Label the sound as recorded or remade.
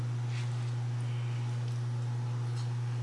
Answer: recorded